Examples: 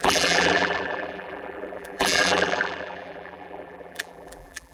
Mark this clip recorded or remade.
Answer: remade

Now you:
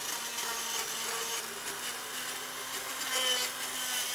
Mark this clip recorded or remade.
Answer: recorded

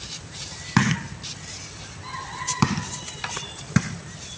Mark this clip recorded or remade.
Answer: remade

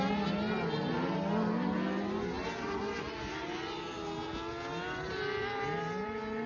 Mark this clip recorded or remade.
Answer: recorded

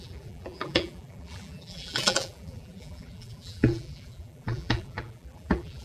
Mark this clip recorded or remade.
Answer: remade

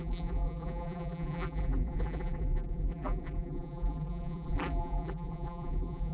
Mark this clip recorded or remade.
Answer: remade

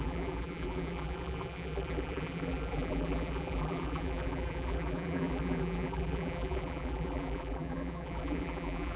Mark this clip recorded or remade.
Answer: remade